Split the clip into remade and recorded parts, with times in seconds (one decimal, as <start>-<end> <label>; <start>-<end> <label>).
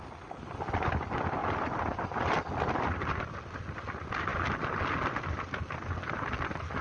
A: 0.0-1.4 recorded; 1.4-2.1 remade; 2.1-6.8 recorded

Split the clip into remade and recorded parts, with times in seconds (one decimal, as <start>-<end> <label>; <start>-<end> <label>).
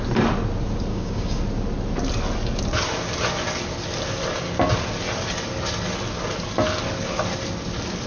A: 0.0-0.9 recorded; 0.9-1.4 remade; 1.4-8.1 recorded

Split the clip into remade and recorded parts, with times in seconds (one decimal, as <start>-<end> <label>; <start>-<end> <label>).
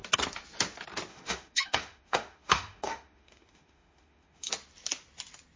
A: 0.0-1.1 recorded; 1.1-4.5 remade; 4.5-5.6 recorded